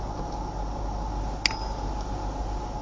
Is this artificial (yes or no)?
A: no